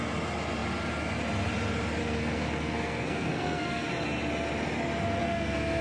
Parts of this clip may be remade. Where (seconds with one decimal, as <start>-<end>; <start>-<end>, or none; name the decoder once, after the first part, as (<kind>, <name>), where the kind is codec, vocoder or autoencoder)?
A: 2.0-3.9 (codec, SNAC); 5.2-5.8